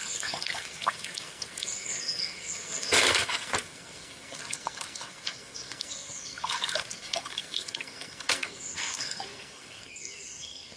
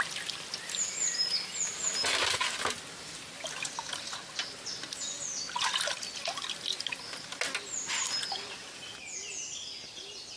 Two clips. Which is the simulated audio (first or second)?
first